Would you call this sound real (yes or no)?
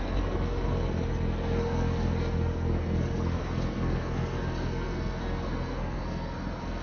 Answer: no